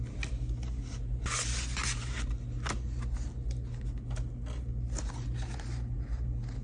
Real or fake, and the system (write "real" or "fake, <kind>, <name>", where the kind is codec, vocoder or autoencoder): real